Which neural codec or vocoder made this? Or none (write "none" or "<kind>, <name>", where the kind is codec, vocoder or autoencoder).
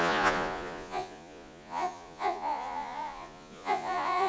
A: vocoder, Vocos